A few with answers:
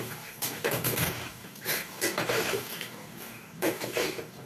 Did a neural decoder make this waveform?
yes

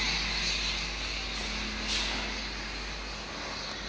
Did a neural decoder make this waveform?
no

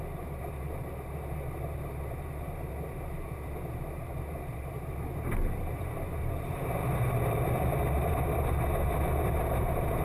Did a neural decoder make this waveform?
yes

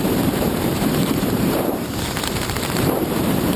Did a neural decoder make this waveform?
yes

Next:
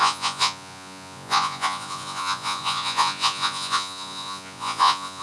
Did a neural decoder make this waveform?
yes